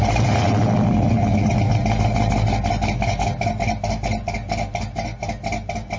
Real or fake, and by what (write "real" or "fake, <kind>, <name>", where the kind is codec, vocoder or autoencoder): real